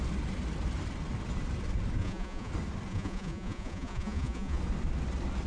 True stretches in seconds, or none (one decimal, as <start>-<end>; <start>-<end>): 0.0-2.0; 2.5-2.9; 4.6-5.5